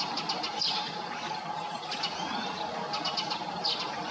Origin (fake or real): real